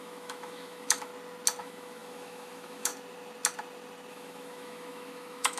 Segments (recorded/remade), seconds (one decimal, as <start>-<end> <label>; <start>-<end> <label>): 0.0-1.1 remade; 1.1-1.6 recorded; 1.6-2.9 remade; 2.9-4.1 recorded; 4.1-5.6 remade